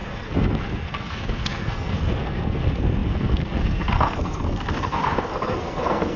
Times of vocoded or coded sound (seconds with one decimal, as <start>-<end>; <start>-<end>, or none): 0.0-6.2